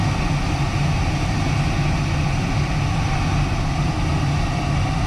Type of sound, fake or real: real